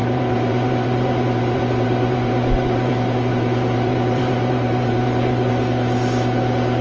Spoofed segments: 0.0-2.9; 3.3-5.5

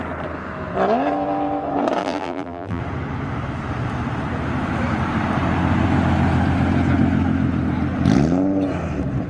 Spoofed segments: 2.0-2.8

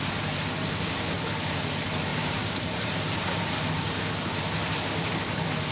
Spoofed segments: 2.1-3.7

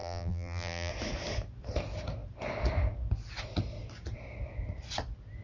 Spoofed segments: 0.0-0.9

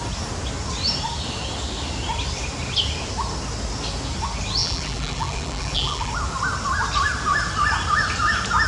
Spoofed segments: 4.6-6.1

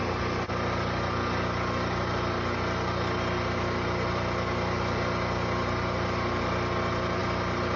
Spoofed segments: none

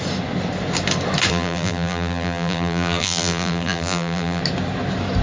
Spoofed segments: 1.3-4.4